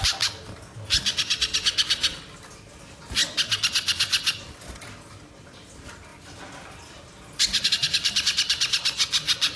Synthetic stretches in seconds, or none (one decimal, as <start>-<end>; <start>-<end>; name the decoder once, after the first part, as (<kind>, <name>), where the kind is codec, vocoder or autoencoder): none